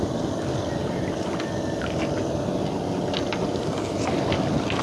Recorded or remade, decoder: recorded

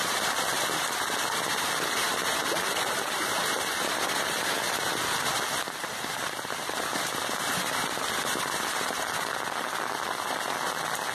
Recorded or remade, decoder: recorded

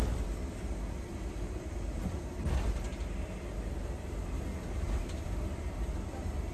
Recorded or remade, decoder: recorded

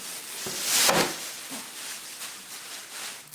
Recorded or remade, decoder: recorded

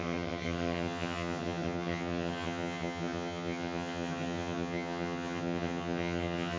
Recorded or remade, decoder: remade, vocoder, HiFi-GAN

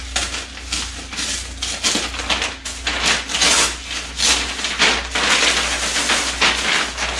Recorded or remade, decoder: recorded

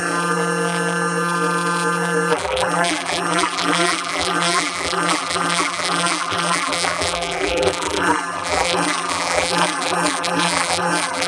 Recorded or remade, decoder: remade, vocoder, BigVGAN v2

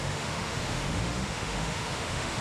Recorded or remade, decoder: remade, autoencoder, DAC-VAE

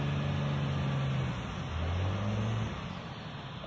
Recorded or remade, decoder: recorded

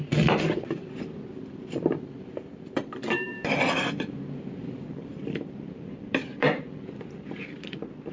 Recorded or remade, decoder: remade, vocoder, BigVGAN v2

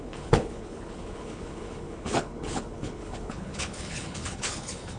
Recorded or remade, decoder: remade, codec, HILCodec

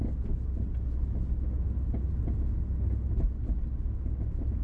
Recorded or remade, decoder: recorded